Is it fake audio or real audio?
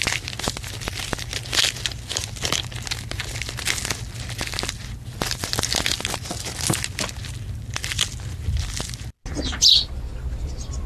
real